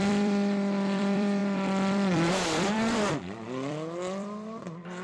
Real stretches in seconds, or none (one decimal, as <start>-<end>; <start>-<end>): none

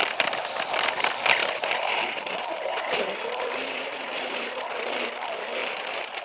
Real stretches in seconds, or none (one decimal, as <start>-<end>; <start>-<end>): 0.0-1.4; 5.1-5.6

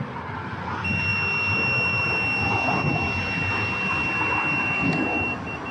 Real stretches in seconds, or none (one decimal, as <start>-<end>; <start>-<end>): 0.0-5.7

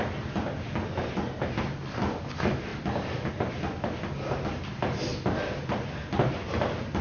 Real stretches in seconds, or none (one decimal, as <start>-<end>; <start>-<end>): 0.0-7.0